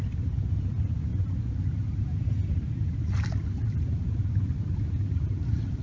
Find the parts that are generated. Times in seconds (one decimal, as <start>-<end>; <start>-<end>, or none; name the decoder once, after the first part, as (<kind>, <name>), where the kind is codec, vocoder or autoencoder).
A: none